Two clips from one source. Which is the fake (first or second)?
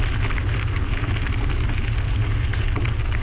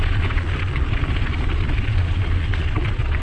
second